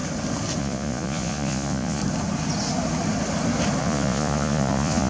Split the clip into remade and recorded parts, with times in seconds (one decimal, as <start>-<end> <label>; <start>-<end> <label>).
0.0-0.6 recorded; 0.6-2.0 remade; 2.0-3.8 recorded; 3.8-5.1 remade